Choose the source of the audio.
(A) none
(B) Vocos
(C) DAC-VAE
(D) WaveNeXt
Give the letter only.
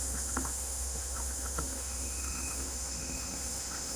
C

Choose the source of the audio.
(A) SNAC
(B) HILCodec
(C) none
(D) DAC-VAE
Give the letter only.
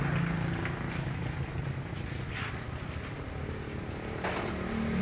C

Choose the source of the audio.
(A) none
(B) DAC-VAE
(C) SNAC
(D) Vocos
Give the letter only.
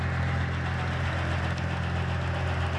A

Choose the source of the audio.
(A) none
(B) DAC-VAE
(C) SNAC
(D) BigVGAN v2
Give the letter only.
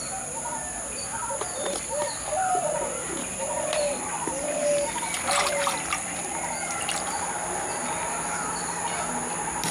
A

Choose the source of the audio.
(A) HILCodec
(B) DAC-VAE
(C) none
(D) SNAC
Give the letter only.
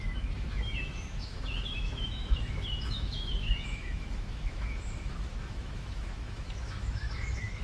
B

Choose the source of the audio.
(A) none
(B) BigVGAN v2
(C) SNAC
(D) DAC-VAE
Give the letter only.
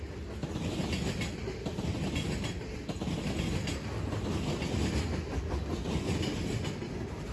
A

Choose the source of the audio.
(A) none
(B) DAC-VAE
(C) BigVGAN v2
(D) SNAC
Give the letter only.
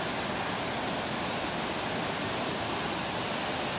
A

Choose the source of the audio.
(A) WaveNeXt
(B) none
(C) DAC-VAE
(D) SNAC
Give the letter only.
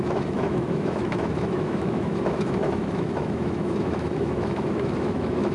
C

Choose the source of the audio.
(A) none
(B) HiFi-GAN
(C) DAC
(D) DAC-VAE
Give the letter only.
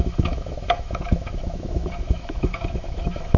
D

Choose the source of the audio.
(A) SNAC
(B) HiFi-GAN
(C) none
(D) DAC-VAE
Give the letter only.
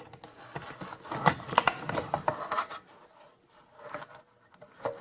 C